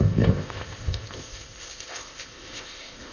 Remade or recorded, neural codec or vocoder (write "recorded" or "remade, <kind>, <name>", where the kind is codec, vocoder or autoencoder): remade, codec, ZipCodec